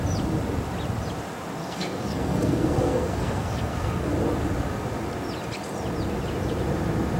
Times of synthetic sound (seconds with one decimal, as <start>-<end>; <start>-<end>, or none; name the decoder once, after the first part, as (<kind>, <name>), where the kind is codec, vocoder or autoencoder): 1.6-4.1 (codec, SNAC)